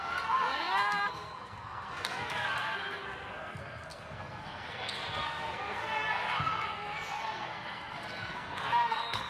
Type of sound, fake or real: fake